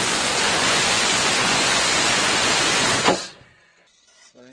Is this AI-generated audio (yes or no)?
yes